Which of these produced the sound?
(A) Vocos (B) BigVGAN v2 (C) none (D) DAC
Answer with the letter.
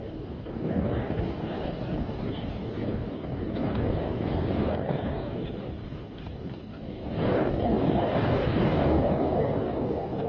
D